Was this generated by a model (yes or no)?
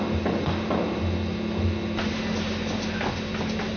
no